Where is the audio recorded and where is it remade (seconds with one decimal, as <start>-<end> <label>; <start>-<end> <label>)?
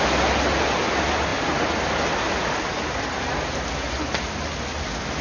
0.0-5.2 recorded